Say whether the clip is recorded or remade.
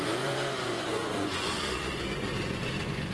remade